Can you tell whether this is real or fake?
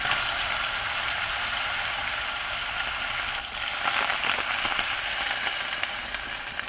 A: real